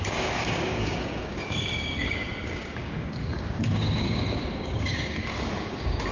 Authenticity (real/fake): fake